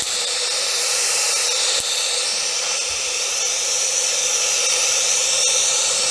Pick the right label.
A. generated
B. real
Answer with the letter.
B